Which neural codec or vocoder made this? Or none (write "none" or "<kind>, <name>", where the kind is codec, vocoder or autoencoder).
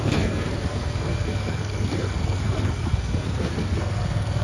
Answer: codec, SNAC